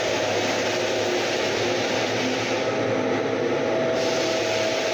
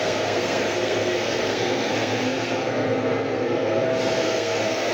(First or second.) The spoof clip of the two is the second